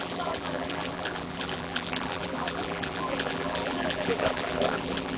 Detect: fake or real fake